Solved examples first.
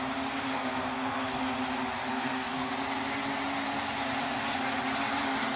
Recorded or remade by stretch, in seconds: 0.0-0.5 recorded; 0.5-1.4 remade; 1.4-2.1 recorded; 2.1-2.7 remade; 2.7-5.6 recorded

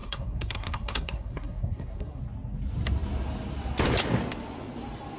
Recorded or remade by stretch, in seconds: 0.0-2.2 remade; 2.2-5.2 recorded